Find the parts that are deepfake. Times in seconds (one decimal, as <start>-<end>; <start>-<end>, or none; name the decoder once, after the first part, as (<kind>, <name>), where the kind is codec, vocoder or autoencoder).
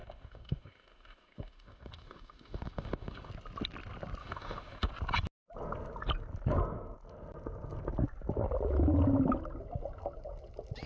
0.0-3.3 (autoencoder, DAC-VAE); 4.2-4.9